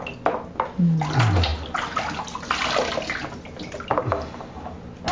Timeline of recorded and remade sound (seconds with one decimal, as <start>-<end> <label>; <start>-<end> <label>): 0.0-5.1 recorded